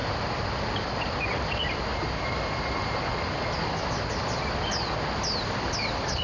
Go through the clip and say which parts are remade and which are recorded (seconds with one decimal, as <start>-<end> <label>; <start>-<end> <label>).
0.0-6.2 recorded